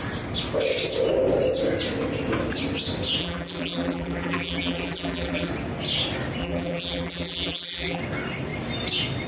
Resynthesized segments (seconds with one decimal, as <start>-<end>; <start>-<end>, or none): 3.2-5.5; 6.4-8.0